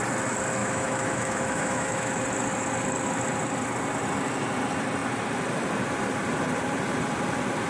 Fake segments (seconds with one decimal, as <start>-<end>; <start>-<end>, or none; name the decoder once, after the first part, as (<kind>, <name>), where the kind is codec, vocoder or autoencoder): 0.6-2.2 (autoencoder, DAC-VAE)